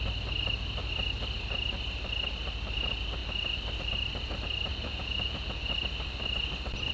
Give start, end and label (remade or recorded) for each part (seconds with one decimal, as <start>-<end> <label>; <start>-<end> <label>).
0.0-4.7 recorded; 4.7-5.7 remade; 5.7-6.9 recorded